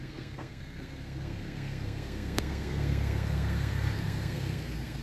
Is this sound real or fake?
fake